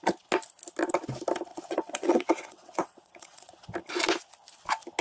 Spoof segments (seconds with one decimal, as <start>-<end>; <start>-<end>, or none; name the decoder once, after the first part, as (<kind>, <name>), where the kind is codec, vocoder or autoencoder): 1.5-3.5 (vocoder, WaveNeXt)